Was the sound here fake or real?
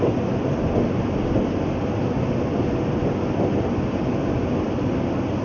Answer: real